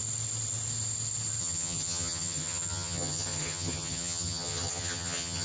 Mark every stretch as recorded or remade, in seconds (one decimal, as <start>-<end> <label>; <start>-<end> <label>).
0.0-1.4 recorded; 1.4-5.4 remade

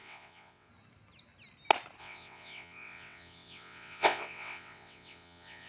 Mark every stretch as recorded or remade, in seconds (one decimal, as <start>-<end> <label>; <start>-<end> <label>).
0.0-0.7 remade; 0.7-2.0 recorded; 2.0-5.7 remade

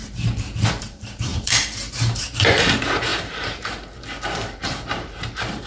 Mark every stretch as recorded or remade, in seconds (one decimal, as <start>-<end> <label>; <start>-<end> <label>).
0.0-5.7 remade

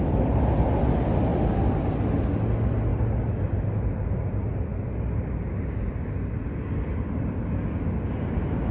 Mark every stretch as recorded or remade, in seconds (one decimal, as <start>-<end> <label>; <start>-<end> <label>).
0.0-8.7 recorded

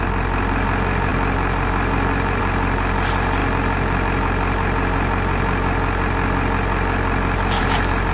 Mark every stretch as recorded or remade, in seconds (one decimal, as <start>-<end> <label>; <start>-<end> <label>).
0.0-8.1 recorded

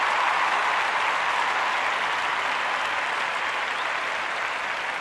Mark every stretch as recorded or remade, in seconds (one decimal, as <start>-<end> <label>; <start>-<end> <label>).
0.0-5.0 recorded